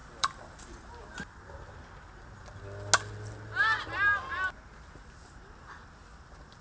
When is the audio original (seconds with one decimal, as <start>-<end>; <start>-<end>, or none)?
0.6-6.6